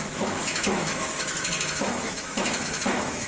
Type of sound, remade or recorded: remade